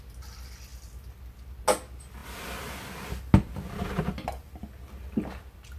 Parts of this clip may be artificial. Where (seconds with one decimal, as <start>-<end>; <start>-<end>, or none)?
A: none